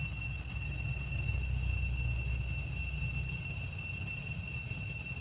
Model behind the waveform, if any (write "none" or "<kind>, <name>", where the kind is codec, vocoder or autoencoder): none